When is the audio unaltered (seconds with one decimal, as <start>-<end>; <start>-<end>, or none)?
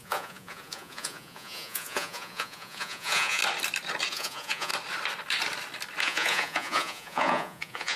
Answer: 3.4-4.1; 4.7-6.0